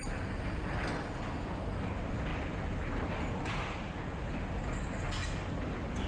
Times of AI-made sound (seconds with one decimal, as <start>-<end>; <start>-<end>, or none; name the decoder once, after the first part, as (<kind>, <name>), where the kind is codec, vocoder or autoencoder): none